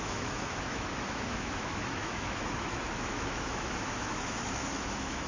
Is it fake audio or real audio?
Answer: fake